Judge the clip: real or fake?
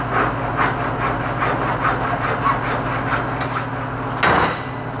real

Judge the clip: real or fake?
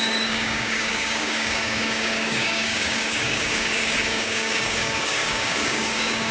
fake